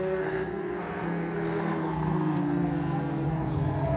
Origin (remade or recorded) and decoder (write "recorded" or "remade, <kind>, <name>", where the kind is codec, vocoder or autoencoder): remade, codec, SNAC